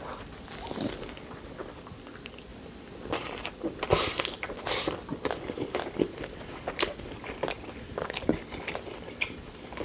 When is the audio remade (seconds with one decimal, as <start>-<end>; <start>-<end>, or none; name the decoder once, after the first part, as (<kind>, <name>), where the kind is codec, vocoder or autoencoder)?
0.0-9.8 (vocoder, BigVGAN v2)